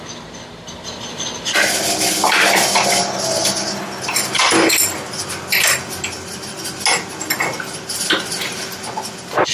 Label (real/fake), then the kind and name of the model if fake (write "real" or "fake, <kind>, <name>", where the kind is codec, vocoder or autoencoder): real